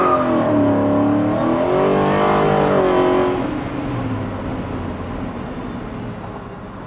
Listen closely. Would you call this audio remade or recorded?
recorded